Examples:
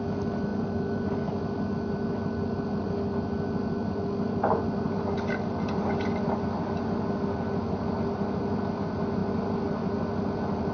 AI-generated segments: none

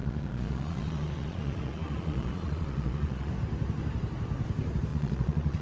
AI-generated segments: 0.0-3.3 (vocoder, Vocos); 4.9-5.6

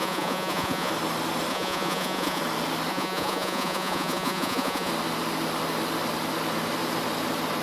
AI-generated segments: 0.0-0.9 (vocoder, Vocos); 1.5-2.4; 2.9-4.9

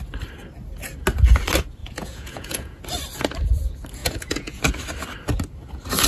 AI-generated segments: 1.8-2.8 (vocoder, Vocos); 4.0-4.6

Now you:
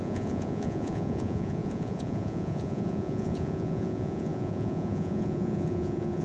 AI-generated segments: 0.0-6.2 (vocoder, Vocos)

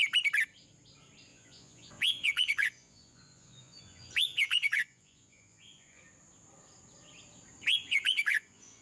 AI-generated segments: 1.3-6.0 (vocoder, Vocos); 7.7-8.8